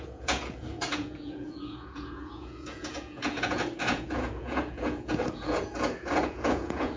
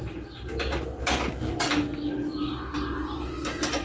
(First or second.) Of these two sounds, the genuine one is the second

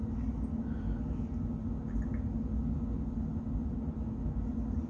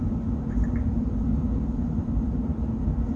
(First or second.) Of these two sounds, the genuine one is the first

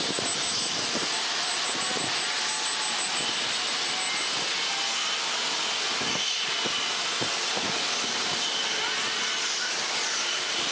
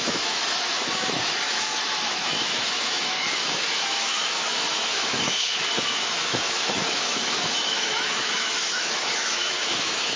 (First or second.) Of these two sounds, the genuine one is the first